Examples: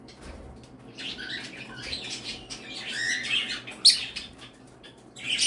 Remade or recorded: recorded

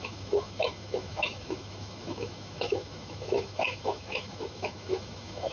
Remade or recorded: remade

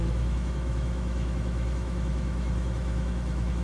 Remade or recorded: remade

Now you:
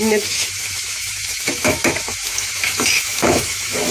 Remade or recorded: remade